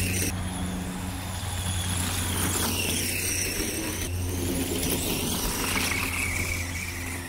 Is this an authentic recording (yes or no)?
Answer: yes